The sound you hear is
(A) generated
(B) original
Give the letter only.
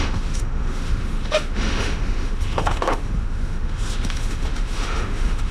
A